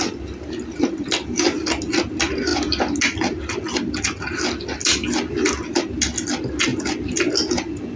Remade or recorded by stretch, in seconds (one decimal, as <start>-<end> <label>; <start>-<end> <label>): 0.0-8.0 recorded